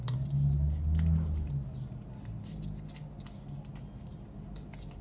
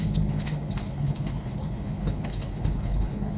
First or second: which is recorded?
first